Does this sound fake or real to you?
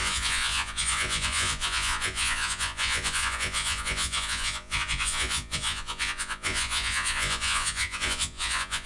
fake